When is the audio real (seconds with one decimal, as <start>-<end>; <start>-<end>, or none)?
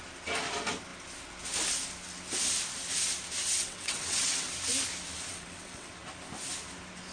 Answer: 0.0-3.6; 4.5-5.3; 5.9-7.1